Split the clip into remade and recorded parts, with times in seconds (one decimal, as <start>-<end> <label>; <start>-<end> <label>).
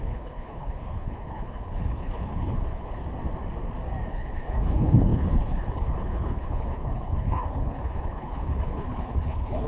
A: 0.0-3.0 remade; 3.0-4.1 recorded; 4.1-9.7 remade